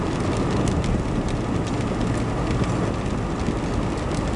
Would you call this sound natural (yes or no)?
yes